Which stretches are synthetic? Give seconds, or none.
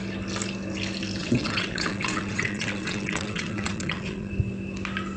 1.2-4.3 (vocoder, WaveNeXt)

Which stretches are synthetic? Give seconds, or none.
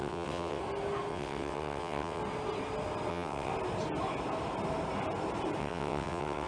0.0-0.6 (vocoder, WaveNeXt); 1.1-2.2; 3.1-3.5; 5.6-6.5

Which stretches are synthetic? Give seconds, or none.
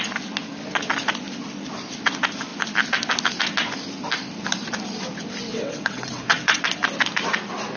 5.5-6.6 (vocoder, WaveNeXt)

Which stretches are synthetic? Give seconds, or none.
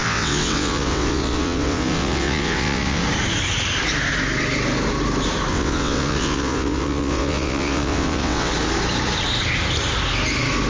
0.0-3.0 (vocoder, WaveNeXt); 5.5-8.5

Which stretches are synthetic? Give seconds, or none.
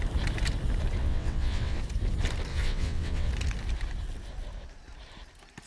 1.0-1.8 (vocoder, WaveNeXt); 2.5-3.3